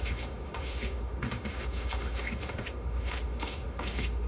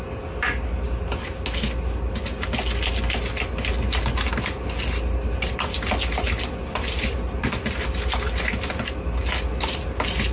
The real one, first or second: second